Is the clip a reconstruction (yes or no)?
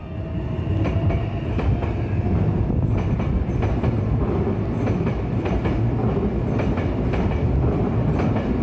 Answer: no